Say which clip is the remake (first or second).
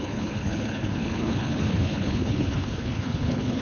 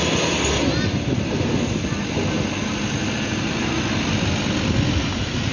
first